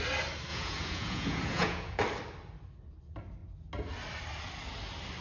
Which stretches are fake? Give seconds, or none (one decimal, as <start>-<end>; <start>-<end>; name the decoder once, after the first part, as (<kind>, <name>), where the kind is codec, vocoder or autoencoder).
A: 0.5-2.0 (vocoder, Vocos)